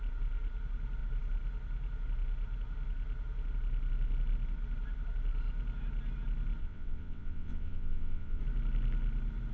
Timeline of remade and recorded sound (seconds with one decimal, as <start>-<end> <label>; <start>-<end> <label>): 0.0-6.6 recorded; 6.6-8.4 remade; 8.4-9.5 recorded